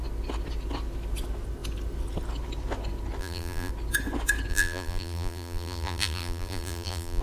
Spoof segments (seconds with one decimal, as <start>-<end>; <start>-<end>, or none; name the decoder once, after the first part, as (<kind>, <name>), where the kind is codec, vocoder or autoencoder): 3.2-3.7 (vocoder, BigVGAN v2); 4.5-7.2